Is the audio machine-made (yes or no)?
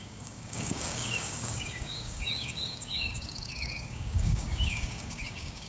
yes